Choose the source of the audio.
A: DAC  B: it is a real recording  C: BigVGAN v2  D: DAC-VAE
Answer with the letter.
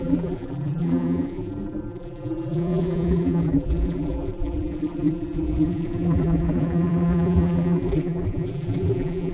C